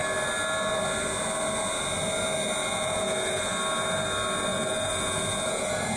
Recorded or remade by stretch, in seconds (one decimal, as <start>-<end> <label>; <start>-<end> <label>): 0.0-2.6 recorded; 2.6-3.5 remade; 3.5-4.5 recorded; 4.5-6.0 remade